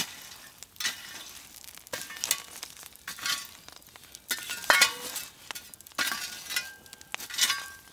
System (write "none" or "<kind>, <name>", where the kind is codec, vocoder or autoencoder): none